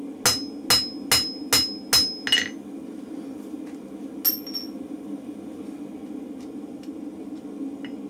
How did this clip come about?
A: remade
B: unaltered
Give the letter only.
B